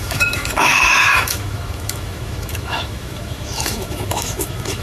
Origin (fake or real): fake